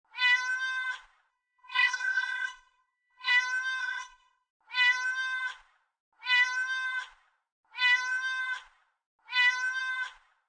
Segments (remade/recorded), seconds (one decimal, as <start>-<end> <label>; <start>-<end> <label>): 0.0-1.3 recorded; 1.3-3.3 remade; 3.3-3.8 recorded; 3.8-4.5 remade; 4.5-10.5 recorded